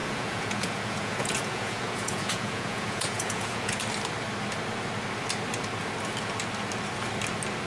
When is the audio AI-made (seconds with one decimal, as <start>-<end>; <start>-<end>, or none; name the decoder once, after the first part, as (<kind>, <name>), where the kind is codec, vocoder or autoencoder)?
0.0-3.8 (vocoder, Vocos)